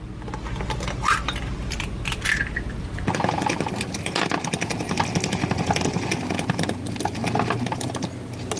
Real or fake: real